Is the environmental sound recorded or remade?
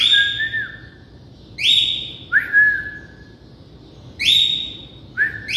recorded